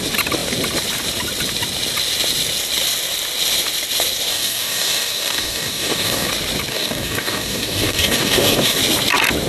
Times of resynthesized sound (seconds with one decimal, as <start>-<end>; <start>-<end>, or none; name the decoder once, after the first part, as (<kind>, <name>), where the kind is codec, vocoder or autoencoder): 4.3-6.3 (codec, DAC); 6.7-8.8